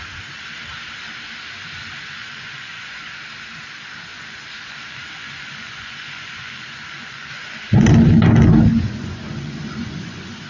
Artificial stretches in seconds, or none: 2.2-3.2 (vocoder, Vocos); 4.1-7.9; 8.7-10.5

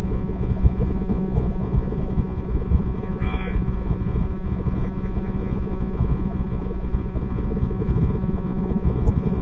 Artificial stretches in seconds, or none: 0.0-9.4 (vocoder, Vocos)